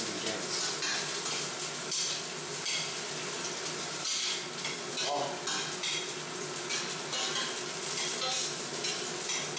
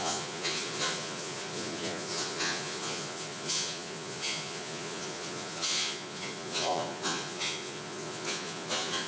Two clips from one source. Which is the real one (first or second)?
first